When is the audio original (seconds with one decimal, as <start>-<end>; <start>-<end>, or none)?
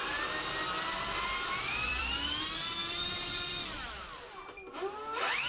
2.0-2.8; 4.9-5.5